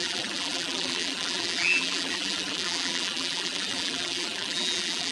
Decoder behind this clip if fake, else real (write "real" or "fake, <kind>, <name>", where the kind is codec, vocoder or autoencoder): fake, vocoder, BigVGAN v2